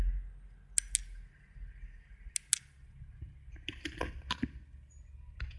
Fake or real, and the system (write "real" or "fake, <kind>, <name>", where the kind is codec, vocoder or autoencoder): real